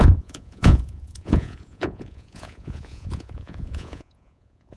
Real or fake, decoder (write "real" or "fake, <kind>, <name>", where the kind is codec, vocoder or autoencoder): fake, vocoder, Vocos